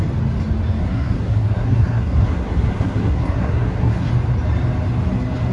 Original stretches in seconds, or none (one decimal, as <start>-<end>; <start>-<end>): 0.0-0.8; 4.1-5.5